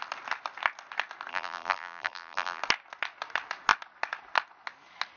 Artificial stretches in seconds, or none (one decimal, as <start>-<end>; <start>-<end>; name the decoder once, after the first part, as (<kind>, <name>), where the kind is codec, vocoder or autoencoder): 1.3-2.6 (vocoder, BigVGAN v2)